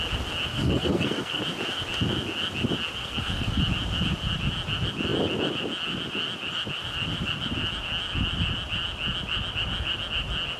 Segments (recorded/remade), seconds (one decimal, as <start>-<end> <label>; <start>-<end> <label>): 0.0-0.5 recorded; 0.5-1.4 remade; 1.4-3.0 recorded; 3.0-3.6 remade; 3.6-10.6 recorded

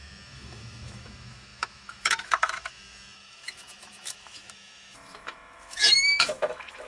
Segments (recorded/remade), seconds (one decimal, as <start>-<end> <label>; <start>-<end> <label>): 0.0-6.9 remade

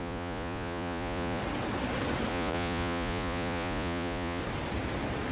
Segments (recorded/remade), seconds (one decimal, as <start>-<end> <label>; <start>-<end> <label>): 0.0-1.4 remade; 1.4-2.3 recorded; 2.3-4.4 remade; 4.4-5.3 recorded